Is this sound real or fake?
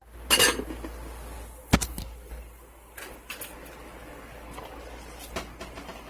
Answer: real